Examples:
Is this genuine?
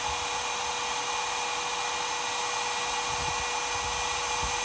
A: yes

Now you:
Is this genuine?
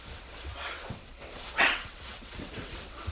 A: no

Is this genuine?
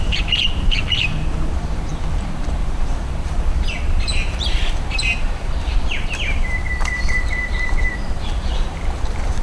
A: no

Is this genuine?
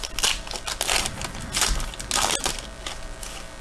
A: yes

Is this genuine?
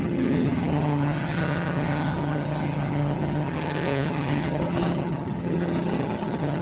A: no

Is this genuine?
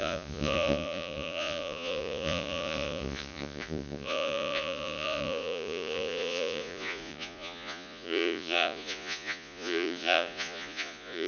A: no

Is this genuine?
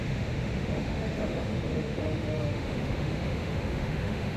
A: no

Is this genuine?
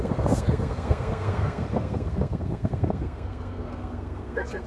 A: no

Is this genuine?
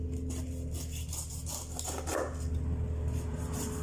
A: no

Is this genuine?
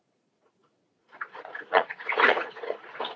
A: no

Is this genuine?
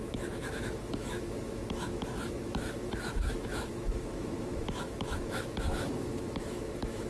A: no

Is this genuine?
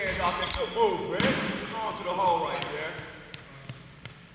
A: yes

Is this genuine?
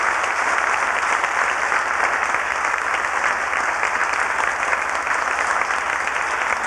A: yes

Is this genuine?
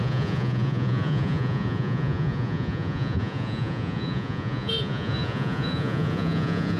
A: no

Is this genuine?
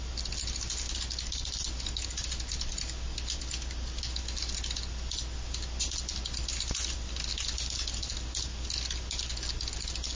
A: yes